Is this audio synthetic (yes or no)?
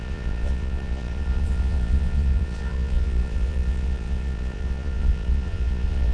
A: yes